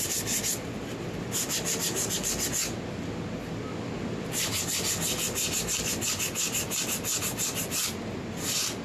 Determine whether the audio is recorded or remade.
recorded